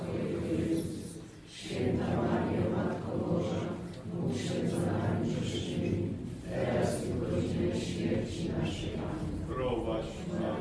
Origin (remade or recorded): recorded